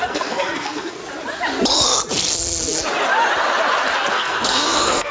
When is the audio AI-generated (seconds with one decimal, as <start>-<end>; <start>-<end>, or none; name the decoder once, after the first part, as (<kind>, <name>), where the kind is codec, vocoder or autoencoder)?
0.0-1.0 (codec, SNAC); 4.1-5.1